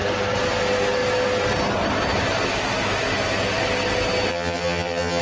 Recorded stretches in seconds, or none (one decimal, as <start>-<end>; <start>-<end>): 0.0-4.3